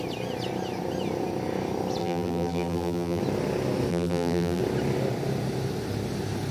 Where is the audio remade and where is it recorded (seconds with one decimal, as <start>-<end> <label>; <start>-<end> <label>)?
0.0-2.0 recorded; 2.0-3.2 remade; 3.2-3.9 recorded; 3.9-4.6 remade; 4.6-6.5 recorded